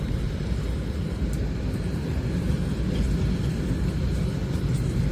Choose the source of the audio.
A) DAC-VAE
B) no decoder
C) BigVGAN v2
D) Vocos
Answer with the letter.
B